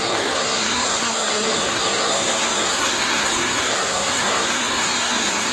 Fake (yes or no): yes